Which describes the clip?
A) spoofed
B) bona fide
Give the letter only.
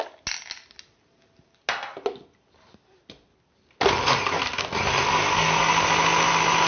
B